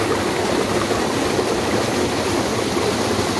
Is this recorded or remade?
recorded